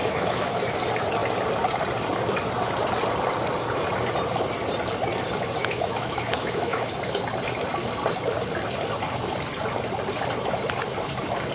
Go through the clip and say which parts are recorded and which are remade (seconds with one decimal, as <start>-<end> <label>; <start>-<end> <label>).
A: 0.0-0.5 remade; 0.5-5.6 recorded; 5.6-6.9 remade; 6.9-11.5 recorded